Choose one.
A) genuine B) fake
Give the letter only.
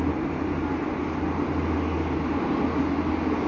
A